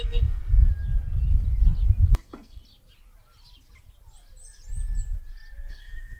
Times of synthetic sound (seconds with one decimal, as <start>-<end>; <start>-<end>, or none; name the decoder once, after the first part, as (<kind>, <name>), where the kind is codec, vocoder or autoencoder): 0.0-0.4 (codec, SNAC); 2.1-2.6; 5.7-6.2